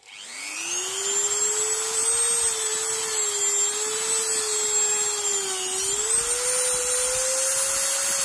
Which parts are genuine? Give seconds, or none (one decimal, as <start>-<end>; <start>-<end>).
0.0-8.2